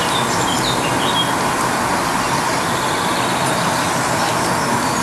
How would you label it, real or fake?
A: real